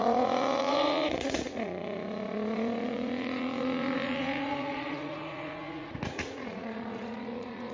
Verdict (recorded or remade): remade